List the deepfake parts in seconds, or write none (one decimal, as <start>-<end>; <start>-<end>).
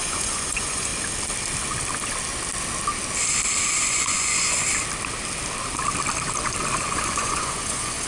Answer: 0.0-0.9; 3.9-4.6; 6.8-8.1